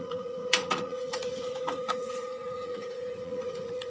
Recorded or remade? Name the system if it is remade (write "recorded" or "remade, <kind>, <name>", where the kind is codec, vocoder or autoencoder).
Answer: remade, vocoder, Vocos